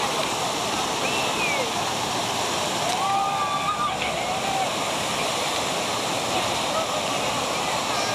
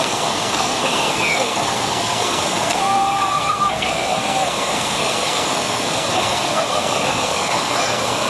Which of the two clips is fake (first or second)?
second